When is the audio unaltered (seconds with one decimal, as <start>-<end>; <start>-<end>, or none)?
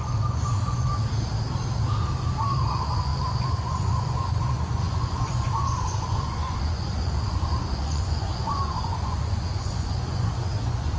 0.9-2.7